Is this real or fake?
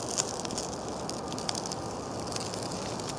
real